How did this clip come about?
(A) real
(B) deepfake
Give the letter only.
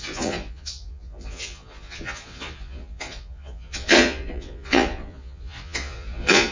B